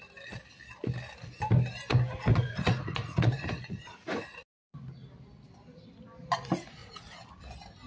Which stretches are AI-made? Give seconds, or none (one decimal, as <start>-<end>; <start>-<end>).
2.3-4.8; 6.8-7.3